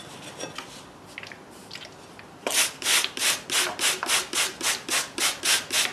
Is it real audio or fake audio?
real